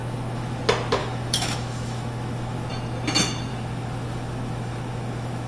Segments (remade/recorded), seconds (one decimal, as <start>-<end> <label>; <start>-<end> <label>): 0.0-0.6 remade; 0.6-1.0 recorded; 1.0-2.7 remade; 2.7-3.5 recorded; 3.5-5.5 remade